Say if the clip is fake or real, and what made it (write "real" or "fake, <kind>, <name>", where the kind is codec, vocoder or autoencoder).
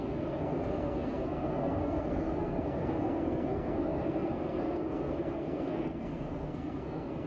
fake, codec, SNAC